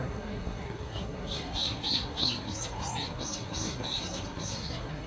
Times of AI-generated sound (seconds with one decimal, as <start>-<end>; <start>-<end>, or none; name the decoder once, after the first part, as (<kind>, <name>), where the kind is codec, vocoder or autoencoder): 0.0-5.1 (codec, SNAC)